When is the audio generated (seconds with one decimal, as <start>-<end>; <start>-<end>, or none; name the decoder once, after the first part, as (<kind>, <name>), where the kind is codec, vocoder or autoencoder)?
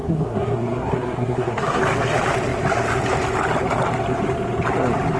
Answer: 0.0-1.8 (codec, SNAC)